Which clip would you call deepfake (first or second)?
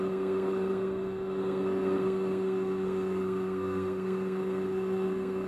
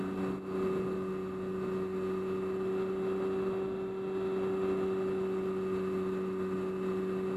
first